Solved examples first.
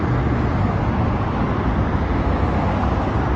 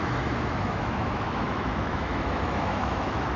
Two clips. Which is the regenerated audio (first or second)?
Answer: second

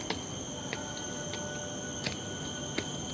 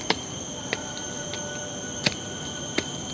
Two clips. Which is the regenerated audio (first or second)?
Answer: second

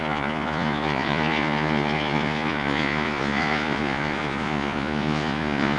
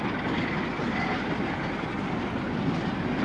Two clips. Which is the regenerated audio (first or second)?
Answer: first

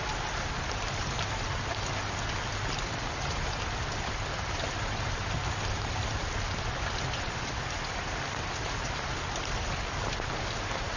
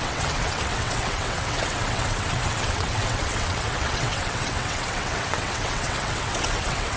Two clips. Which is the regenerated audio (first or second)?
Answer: second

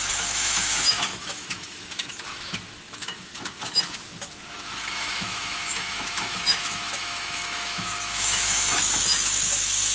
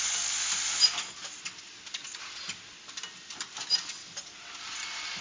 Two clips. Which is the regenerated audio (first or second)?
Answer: first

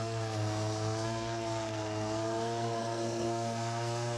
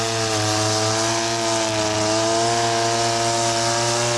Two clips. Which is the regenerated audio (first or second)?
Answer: first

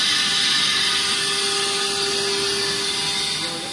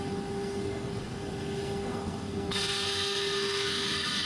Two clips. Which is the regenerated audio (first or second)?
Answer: second